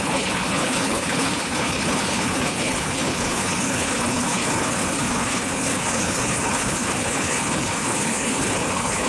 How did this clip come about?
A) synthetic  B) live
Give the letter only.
A